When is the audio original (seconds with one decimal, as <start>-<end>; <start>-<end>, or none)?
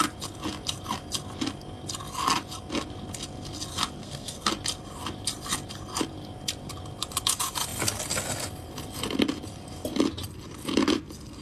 0.0-4.0; 4.5-11.4